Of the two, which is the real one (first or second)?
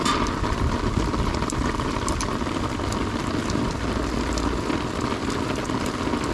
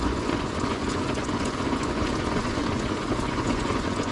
first